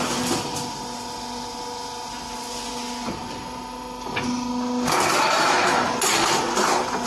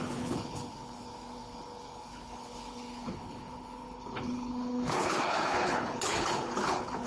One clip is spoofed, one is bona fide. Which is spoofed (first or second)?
second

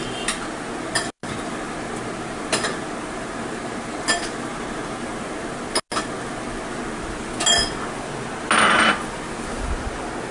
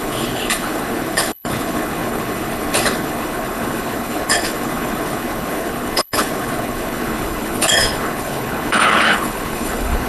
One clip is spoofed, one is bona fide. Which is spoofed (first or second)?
second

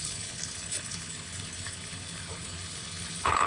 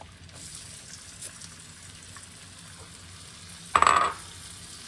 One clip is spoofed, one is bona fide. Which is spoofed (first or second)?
first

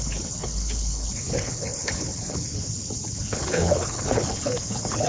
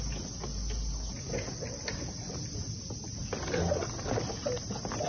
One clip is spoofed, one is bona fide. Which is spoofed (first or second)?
first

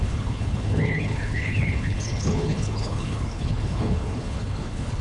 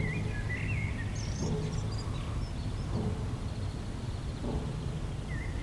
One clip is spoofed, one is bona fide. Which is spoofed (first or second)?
first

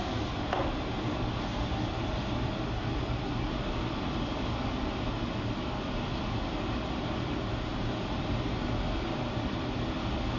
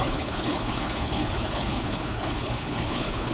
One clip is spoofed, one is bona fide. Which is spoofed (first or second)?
second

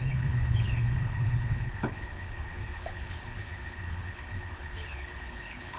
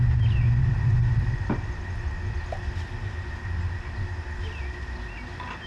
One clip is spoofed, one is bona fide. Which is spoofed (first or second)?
first